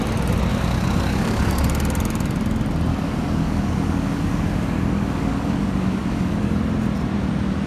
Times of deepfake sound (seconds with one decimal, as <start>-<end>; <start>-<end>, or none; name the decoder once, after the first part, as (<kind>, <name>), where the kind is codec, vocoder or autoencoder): 0.5-1.5 (codec, DAC); 2.9-6.6